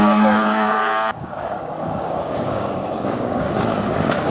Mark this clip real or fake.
fake